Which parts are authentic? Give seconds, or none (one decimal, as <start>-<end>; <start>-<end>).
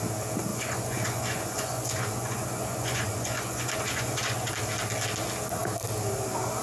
0.0-0.5; 4.5-6.6